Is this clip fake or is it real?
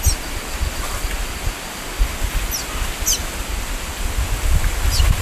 real